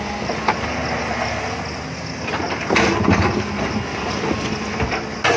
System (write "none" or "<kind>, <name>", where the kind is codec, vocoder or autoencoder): none